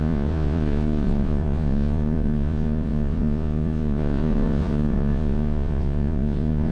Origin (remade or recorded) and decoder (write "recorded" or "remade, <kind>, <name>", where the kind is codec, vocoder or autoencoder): remade, vocoder, Vocos